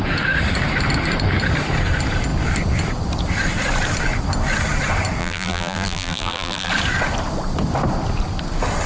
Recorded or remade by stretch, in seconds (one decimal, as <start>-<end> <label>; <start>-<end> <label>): 0.0-5.2 recorded; 5.2-6.7 remade; 6.7-8.9 recorded